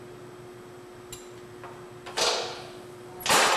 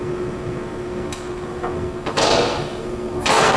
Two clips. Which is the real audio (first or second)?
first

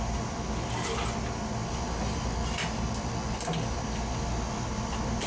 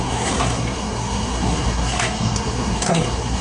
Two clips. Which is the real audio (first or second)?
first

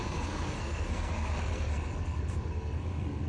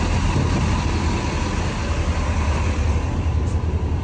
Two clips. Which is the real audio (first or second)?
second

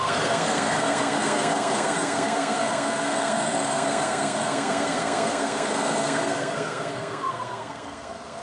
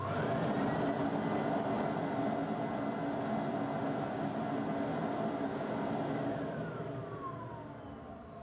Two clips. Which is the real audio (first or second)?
second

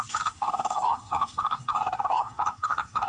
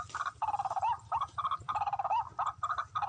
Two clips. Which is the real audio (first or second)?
second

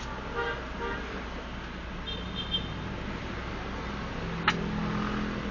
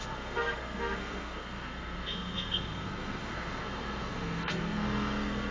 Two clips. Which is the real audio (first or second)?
first